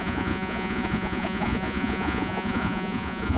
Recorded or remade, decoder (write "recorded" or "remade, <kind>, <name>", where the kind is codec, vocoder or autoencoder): remade, vocoder, Vocos